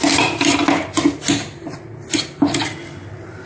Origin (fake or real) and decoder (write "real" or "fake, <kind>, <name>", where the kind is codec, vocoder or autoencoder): real